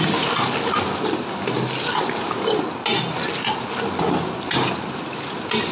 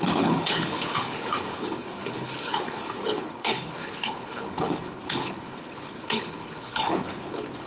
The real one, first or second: first